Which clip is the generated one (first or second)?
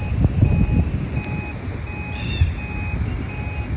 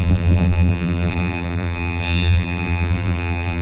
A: second